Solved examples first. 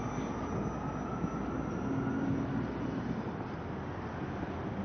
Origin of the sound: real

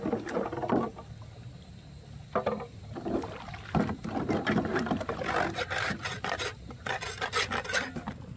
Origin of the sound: real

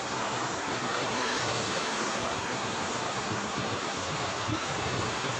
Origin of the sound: fake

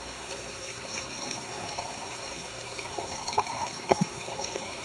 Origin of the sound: fake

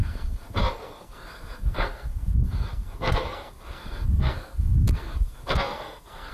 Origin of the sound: fake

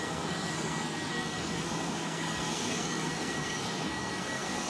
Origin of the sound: fake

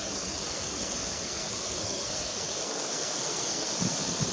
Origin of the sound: fake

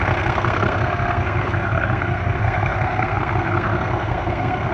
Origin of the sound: fake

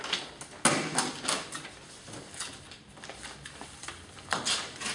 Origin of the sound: real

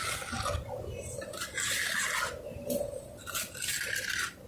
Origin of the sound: real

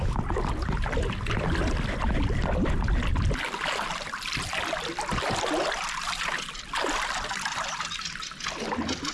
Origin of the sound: real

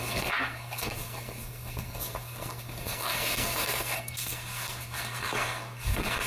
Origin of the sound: fake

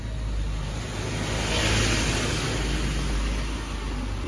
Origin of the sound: real